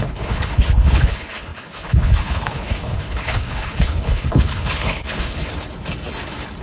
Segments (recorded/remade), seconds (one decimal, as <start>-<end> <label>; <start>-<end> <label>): 0.0-5.4 remade; 5.4-6.6 recorded